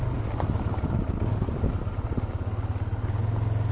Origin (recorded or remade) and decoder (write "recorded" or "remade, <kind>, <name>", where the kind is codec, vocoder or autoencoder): recorded